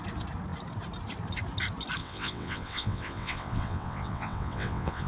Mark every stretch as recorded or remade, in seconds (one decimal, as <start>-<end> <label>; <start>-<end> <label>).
0.0-2.0 recorded; 2.0-5.1 remade